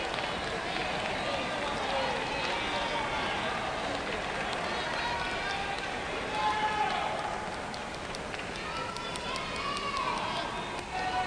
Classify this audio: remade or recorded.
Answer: recorded